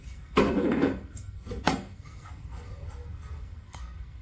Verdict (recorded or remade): remade